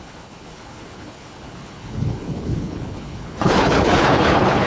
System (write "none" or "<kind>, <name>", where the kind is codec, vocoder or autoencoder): codec, HILCodec